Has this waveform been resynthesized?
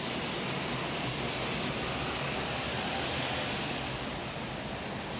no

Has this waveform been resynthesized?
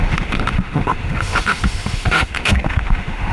yes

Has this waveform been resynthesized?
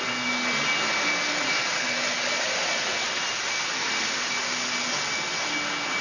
no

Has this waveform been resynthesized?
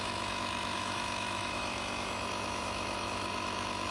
yes